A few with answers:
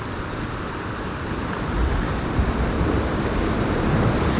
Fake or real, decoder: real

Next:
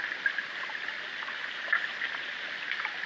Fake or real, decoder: real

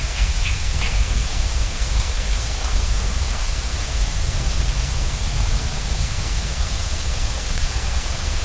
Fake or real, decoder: fake, codec, SNAC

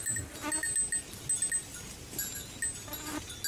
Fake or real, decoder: real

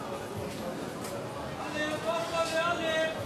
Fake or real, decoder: real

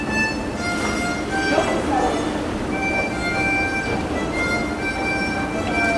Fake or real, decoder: real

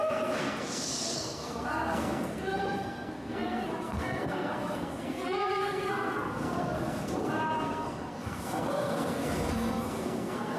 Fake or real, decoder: fake, codec, SNAC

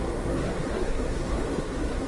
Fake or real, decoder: fake, codec, SNAC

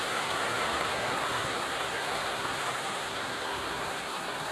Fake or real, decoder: fake, codec, SNAC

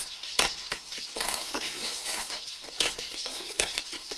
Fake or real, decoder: fake, codec, SNAC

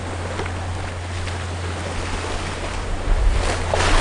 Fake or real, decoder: real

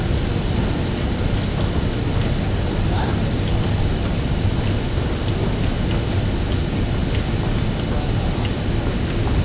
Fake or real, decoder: real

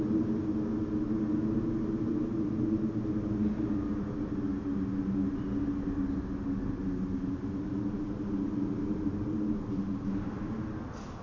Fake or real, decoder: real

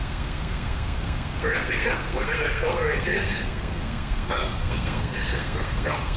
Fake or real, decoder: fake, codec, SNAC